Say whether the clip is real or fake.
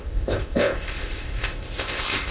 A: fake